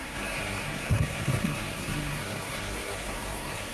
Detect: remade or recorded remade